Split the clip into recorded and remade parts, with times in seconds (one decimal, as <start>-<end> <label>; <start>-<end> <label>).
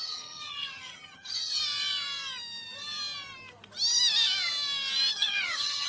0.0-1.6 remade; 1.6-5.1 recorded; 5.1-5.9 remade